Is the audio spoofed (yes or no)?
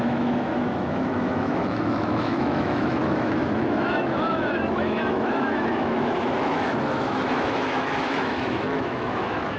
yes